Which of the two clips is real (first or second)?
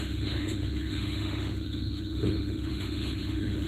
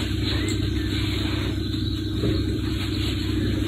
second